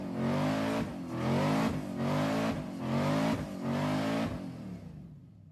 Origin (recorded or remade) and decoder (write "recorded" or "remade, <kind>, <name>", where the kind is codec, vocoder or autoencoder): recorded